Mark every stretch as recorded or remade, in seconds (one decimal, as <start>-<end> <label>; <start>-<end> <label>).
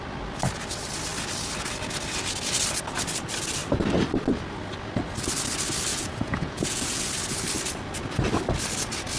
0.0-5.9 recorded; 5.9-7.1 remade; 7.1-9.2 recorded